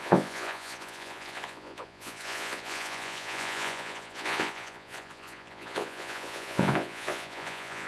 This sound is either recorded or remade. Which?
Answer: remade